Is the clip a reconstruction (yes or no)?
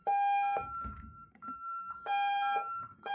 yes